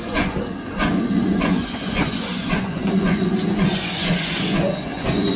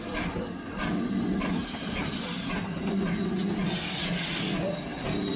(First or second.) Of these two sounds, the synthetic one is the first